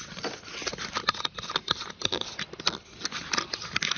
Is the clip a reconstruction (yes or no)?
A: no